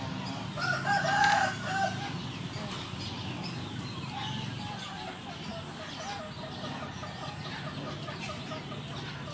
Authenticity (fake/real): real